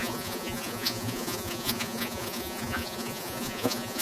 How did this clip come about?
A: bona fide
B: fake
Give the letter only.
B